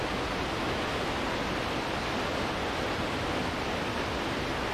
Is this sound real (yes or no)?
yes